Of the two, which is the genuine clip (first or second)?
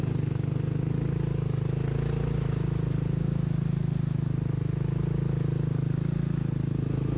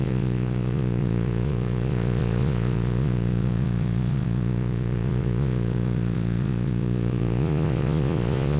first